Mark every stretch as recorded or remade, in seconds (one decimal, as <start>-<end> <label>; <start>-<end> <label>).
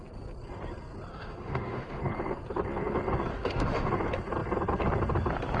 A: 0.0-1.1 recorded; 1.1-2.0 remade; 2.0-3.3 recorded; 3.3-3.9 remade; 3.9-5.6 recorded